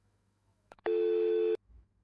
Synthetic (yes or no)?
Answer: yes